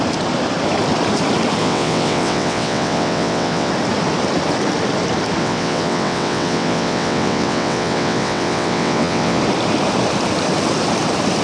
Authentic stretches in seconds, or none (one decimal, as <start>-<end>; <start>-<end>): 0.0-1.6; 3.7-5.4; 9.4-11.4